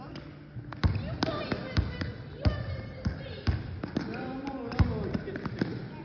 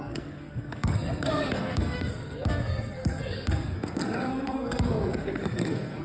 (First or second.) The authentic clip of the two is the first